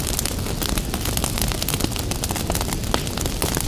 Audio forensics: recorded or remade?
recorded